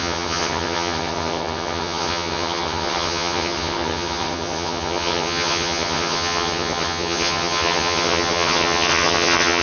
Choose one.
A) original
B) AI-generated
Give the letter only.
B